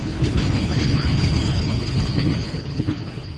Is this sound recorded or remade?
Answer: remade